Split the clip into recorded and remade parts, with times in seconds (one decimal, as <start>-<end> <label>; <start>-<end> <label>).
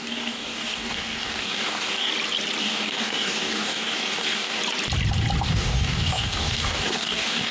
0.0-2.1 remade; 2.1-2.6 recorded; 2.6-4.6 remade; 4.6-5.4 recorded; 5.4-7.5 remade